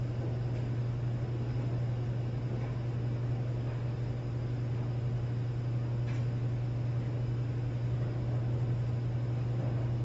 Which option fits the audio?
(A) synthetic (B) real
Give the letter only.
B